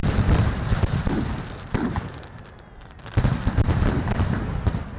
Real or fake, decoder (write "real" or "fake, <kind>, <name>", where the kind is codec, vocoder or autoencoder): fake, vocoder, BigVGAN v2